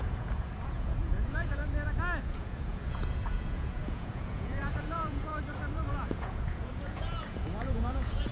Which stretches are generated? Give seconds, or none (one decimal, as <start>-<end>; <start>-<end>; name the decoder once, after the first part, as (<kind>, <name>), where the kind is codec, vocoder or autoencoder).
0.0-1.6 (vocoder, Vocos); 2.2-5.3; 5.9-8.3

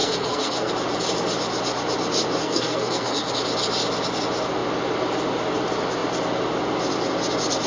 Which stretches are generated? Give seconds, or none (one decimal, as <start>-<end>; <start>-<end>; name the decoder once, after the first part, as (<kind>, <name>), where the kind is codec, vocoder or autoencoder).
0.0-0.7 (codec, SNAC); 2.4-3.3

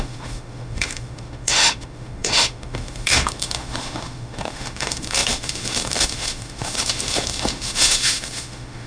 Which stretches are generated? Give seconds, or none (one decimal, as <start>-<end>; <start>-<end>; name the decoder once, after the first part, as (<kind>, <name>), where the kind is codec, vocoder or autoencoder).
0.0-8.9 (autoencoder, DAC-VAE)

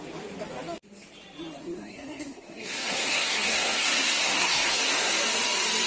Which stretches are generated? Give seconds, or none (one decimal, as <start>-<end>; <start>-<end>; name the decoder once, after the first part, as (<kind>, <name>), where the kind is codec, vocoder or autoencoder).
1.6-5.1 (codec, SNAC)

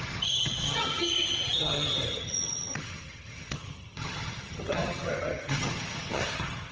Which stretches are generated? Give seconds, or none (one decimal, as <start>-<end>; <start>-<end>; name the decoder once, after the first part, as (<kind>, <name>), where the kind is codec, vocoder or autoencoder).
0.0-6.7 (vocoder, HiFi-GAN)

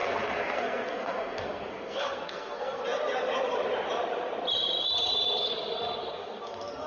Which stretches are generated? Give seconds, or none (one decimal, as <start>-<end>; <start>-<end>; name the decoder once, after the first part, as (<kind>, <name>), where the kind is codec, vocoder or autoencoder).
0.0-2.8 (codec, SNAC); 6.0-6.9